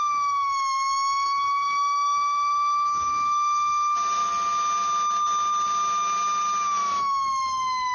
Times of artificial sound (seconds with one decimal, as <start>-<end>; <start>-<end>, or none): 0.0-4.2; 6.8-7.9